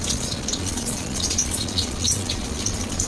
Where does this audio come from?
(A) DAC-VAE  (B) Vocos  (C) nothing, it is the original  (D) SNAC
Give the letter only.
B